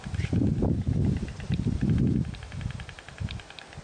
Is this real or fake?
real